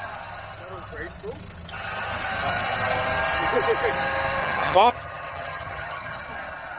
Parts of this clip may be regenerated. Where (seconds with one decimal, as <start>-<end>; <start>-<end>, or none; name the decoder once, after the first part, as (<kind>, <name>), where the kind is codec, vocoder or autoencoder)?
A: 4.4-6.2 (vocoder, HiFi-GAN)

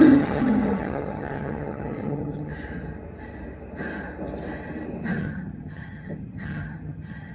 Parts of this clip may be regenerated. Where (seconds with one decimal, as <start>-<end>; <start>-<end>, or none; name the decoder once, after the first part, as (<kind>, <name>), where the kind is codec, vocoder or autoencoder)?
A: 0.0-2.5 (vocoder, HiFi-GAN); 5.2-7.3